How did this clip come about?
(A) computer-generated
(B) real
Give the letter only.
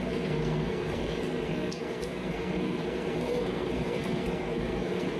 A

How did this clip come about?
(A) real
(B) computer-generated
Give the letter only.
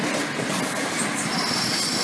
A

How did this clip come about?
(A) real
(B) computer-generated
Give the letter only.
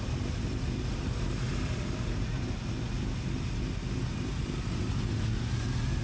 A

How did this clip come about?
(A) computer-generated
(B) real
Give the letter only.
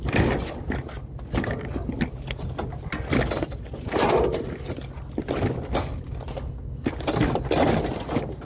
B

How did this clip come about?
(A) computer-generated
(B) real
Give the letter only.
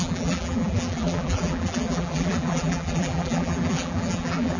A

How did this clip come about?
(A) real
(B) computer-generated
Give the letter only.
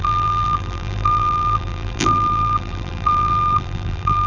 B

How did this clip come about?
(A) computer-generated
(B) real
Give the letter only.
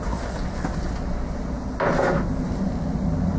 B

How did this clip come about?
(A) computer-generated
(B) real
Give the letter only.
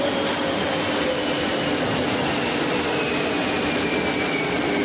B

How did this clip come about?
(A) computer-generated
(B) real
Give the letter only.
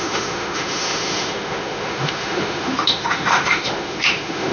A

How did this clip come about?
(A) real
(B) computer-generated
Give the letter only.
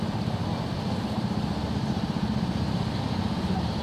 A